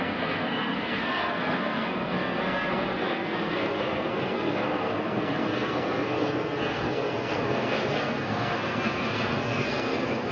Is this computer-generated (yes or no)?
yes